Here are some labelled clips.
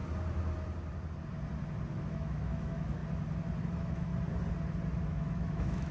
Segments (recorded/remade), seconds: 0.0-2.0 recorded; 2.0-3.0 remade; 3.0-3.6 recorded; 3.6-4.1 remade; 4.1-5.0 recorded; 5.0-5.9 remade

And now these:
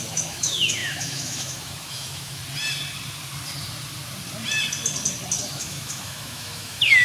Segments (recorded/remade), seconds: 0.0-2.4 remade; 2.4-5.5 recorded; 5.5-7.0 remade

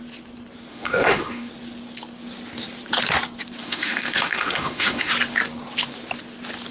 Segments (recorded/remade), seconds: 0.0-0.7 recorded; 0.7-1.5 remade; 1.5-3.6 recorded; 3.6-5.1 remade; 5.1-6.7 recorded

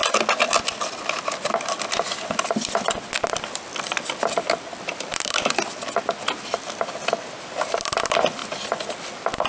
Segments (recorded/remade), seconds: 0.0-9.5 recorded

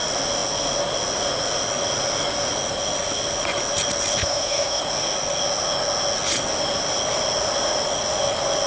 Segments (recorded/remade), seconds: 0.0-4.2 recorded; 4.2-4.8 remade; 4.8-8.7 recorded

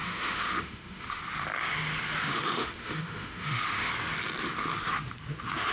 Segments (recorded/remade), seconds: 0.0-1.2 remade; 1.2-2.2 recorded; 2.2-3.9 remade; 3.9-5.7 recorded

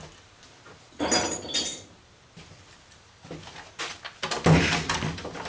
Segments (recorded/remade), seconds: 0.0-5.5 recorded

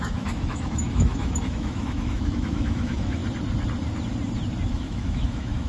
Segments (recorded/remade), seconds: 0.0-3.2 remade; 3.2-4.7 recorded; 4.7-5.7 remade